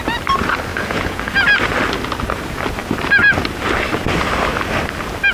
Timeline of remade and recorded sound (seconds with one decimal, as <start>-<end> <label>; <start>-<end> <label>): 0.0-0.7 recorded; 0.7-1.3 remade; 1.3-5.3 recorded